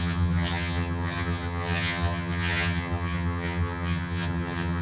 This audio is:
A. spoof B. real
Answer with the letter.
A